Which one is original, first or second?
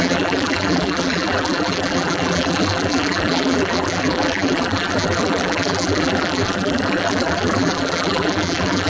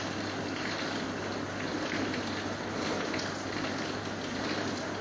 second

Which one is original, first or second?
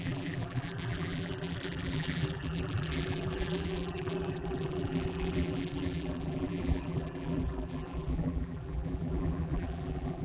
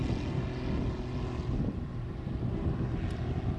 second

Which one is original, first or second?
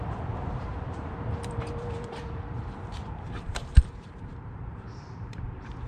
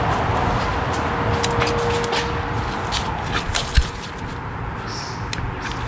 second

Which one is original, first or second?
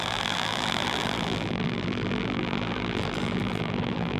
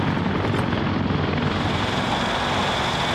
second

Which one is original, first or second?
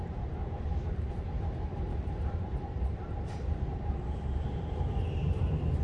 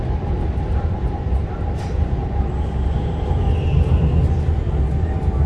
second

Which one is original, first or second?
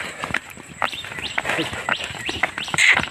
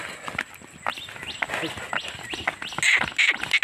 second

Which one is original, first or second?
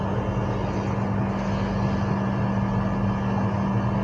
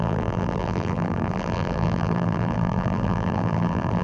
first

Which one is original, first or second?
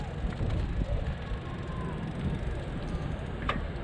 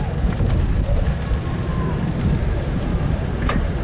first